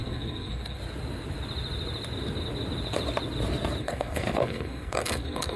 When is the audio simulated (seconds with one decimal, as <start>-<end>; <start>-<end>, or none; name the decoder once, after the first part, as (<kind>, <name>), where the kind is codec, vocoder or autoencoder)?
0.0-0.8 (codec, SNAC); 3.8-5.6